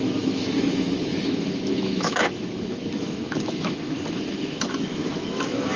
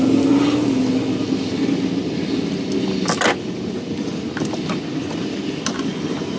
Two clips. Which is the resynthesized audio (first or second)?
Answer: first